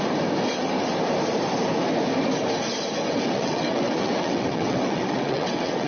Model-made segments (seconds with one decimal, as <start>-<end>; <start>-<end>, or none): 3.1-5.9

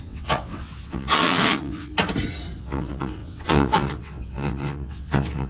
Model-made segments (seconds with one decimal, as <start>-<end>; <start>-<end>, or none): 0.0-1.9; 2.6-5.5

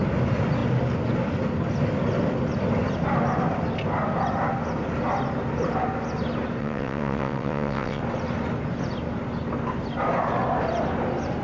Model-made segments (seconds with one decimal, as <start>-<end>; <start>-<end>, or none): 6.6-8.0

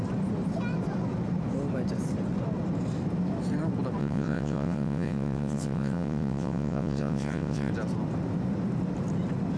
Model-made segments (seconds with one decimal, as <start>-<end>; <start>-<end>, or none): 4.0-7.7

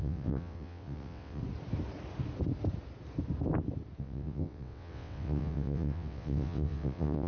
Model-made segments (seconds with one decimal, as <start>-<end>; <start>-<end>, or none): 0.0-1.4; 4.0-7.3